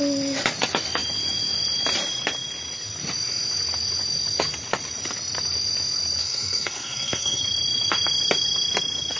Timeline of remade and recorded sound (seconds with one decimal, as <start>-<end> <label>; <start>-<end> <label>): 0.0-6.2 recorded; 6.2-7.4 remade; 7.4-9.2 recorded